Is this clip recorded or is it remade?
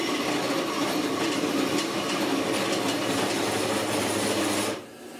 recorded